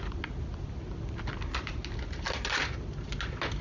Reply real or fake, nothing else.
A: real